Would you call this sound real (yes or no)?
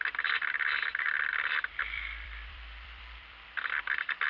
no